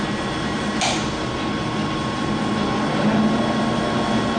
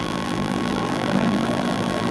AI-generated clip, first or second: second